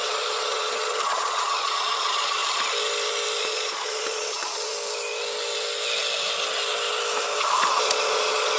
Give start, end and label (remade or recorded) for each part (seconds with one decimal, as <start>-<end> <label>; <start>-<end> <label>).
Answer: 0.0-2.4 remade; 2.4-3.4 recorded; 3.4-4.7 remade; 4.7-7.7 recorded; 7.7-8.6 remade